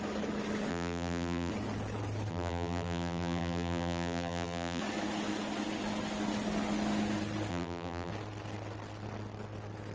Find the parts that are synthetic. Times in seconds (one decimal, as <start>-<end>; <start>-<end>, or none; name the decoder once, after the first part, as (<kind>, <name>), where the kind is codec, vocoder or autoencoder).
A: 0.7-1.5 (vocoder, BigVGAN v2); 2.3-4.8; 7.5-8.1